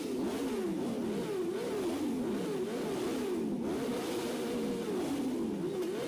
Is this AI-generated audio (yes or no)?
no